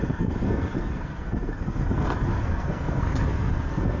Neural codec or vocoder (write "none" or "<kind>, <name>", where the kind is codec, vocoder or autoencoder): codec, SNAC